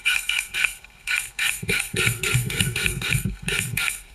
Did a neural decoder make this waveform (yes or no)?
yes